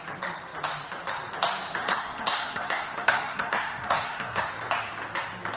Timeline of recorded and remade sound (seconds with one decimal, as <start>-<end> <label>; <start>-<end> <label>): 0.0-1.8 recorded; 1.8-4.5 remade; 4.5-5.6 recorded